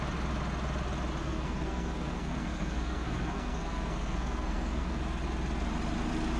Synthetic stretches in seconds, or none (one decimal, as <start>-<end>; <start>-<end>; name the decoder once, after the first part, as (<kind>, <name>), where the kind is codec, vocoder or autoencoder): 1.2-5.0 (codec, SNAC)